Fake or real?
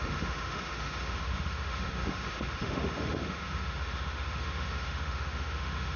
fake